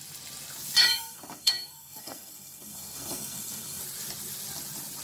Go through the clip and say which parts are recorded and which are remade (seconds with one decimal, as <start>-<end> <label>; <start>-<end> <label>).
0.0-0.8 recorded; 0.8-3.8 remade; 3.8-5.0 recorded